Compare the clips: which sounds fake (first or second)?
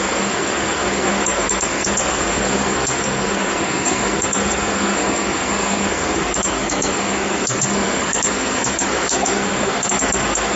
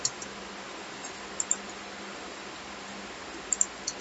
first